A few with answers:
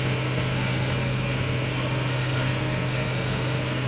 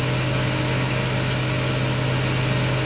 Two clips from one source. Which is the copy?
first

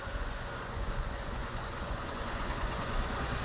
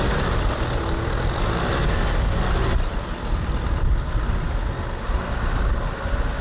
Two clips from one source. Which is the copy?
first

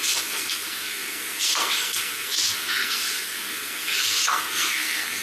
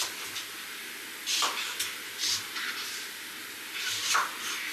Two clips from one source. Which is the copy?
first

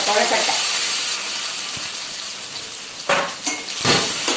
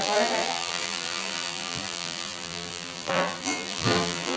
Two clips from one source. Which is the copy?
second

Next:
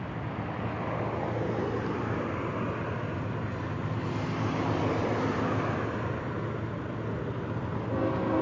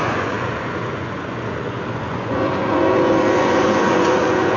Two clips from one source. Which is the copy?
second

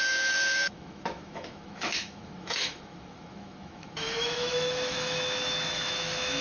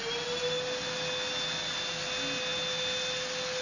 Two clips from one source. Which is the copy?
first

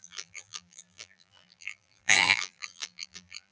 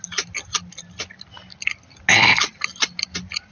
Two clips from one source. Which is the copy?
first